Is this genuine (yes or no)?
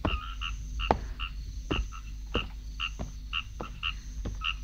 yes